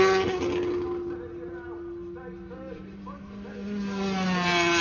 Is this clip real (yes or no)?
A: yes